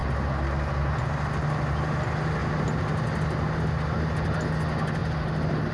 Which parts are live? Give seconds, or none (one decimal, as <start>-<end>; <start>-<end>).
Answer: 0.0-5.7